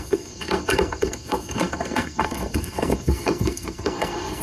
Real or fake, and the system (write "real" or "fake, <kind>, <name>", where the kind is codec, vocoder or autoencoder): fake, codec, SNAC